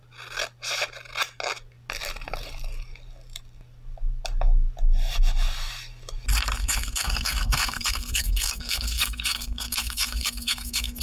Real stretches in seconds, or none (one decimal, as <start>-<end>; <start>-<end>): 0.0-6.6